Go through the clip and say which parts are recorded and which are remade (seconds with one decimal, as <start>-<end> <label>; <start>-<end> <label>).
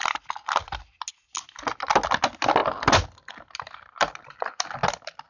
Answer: 0.0-5.3 recorded